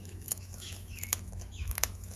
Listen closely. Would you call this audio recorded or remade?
remade